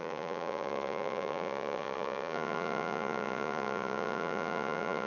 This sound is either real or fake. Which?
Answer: fake